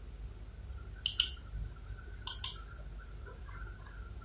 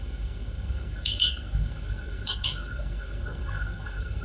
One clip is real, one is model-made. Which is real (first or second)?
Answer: first